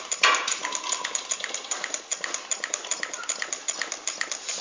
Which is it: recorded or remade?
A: remade